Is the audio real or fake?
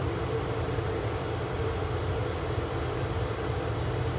real